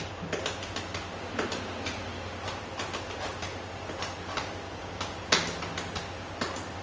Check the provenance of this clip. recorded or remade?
recorded